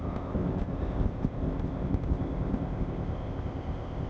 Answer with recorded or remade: remade